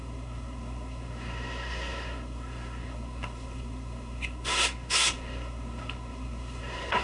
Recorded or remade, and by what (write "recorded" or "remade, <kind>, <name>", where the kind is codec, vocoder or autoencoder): remade, codec, SNAC